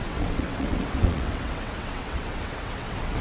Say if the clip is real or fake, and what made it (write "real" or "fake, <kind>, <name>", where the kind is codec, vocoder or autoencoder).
fake, vocoder, WaveNeXt